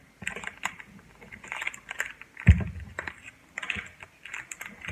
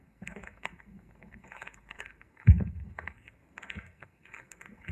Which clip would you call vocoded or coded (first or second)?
second